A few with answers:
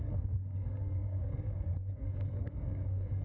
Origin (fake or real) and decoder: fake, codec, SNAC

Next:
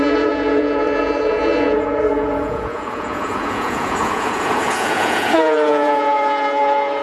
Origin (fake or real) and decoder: fake, vocoder, Vocos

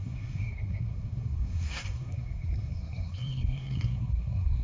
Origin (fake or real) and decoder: fake, codec, SNAC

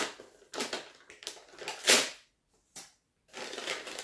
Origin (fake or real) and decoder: real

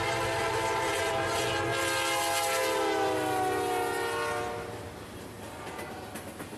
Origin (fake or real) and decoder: real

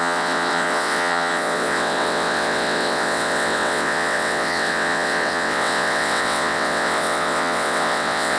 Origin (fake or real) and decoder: fake, vocoder, WaveNeXt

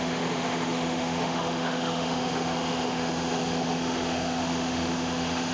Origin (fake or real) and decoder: fake, autoencoder, DAC-VAE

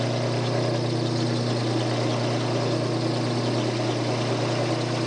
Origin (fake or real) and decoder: real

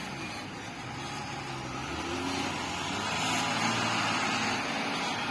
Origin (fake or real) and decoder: real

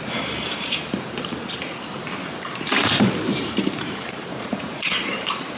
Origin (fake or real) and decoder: fake, vocoder, BigVGAN v2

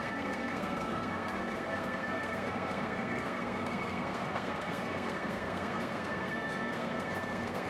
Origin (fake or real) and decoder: fake, codec, SNAC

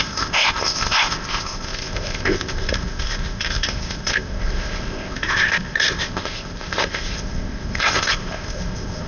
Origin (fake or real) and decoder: fake, codec, ZipCodec